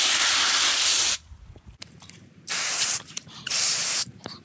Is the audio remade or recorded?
remade